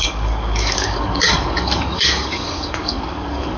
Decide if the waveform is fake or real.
fake